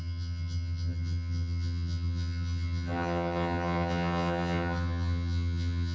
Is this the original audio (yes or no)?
no